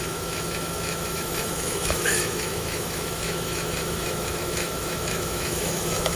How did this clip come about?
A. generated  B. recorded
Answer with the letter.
A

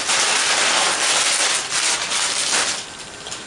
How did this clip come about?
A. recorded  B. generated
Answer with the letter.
A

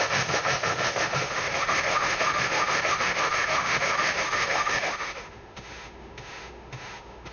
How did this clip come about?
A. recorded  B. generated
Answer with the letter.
B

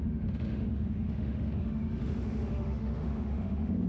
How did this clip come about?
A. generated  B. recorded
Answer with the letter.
A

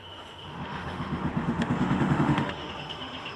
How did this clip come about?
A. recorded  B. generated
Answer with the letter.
B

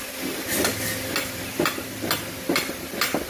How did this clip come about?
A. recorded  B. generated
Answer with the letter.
A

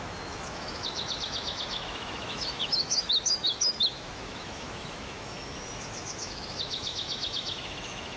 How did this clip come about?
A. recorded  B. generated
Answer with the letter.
B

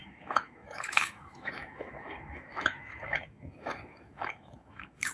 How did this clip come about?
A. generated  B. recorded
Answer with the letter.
A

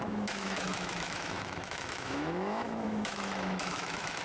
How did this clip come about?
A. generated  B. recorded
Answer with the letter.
A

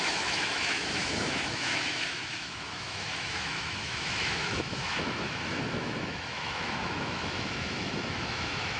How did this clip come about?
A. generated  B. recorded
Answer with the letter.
A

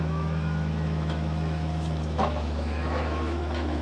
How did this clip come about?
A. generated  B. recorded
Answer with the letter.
A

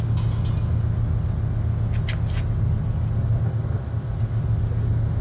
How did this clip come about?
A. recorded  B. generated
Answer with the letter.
A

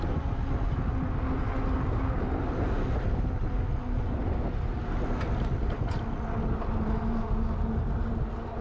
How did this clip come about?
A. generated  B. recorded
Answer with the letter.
B